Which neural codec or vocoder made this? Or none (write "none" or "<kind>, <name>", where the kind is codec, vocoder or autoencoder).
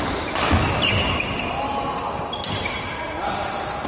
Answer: none